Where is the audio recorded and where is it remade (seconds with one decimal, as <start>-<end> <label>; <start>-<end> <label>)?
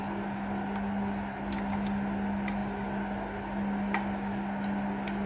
0.0-5.3 recorded